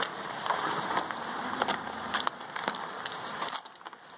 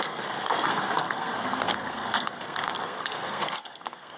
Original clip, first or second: first